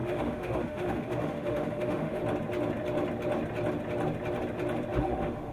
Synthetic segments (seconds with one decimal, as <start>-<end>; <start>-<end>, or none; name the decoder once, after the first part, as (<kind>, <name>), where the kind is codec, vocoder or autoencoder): 0.0-2.2 (autoencoder, DAC-VAE); 5.0-5.5